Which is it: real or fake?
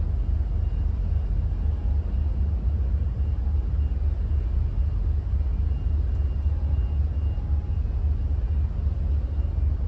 real